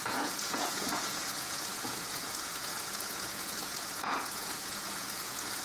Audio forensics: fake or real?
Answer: fake